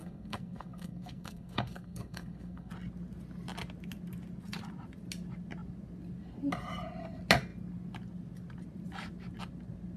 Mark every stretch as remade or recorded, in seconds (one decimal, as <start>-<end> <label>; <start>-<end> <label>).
0.0-2.7 remade; 2.7-10.0 recorded